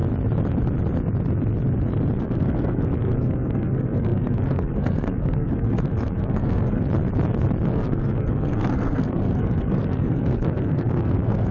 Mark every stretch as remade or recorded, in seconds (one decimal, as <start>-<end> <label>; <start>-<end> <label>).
0.0-2.2 recorded; 2.2-6.8 remade; 6.8-7.7 recorded; 7.7-11.5 remade